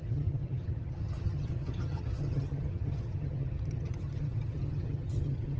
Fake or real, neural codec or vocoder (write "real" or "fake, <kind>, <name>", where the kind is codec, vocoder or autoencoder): fake, vocoder, HiFi-GAN